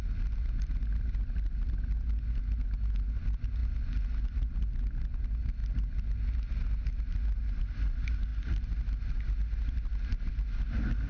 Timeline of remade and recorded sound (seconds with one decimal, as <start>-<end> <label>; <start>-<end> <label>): 0.0-11.1 recorded